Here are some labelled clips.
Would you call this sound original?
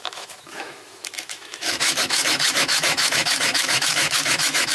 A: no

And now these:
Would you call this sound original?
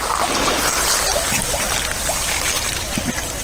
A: yes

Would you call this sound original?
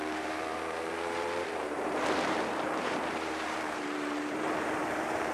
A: no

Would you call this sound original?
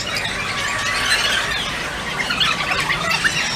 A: yes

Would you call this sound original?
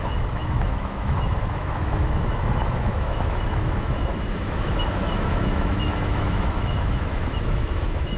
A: no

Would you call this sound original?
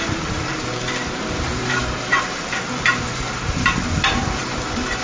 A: no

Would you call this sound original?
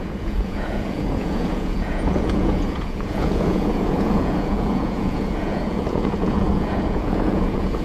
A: no